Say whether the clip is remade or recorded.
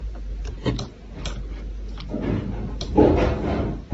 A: recorded